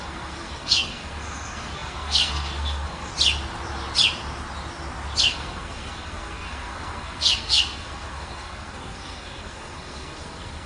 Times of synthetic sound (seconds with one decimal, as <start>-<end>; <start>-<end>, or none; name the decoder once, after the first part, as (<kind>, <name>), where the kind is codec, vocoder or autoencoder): 0.0-3.1 (codec, SNAC); 5.2-10.7